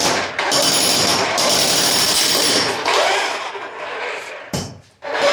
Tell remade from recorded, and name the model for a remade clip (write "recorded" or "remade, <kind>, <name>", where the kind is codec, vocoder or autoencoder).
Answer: remade, vocoder, BigVGAN v2